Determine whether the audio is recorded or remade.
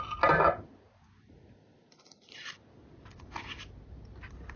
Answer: recorded